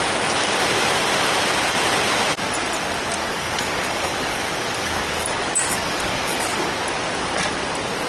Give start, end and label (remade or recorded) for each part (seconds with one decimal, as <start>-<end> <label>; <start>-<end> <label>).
0.0-3.2 recorded; 3.2-6.7 remade; 6.7-8.1 recorded